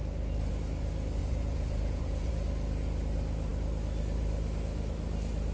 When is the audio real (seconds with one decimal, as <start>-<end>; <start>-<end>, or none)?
0.0-1.2; 2.3-5.5